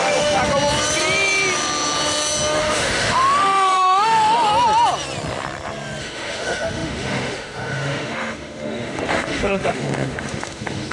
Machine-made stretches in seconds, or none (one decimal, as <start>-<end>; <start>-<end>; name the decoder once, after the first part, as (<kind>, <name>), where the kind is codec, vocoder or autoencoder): 0.0-0.4 (autoencoder, DAC-VAE); 2.6-4.5; 6.0-10.9